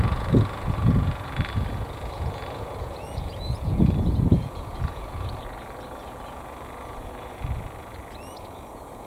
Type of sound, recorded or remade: remade